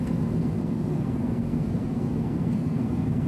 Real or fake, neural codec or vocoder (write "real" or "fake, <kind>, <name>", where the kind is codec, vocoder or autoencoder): fake, codec, SNAC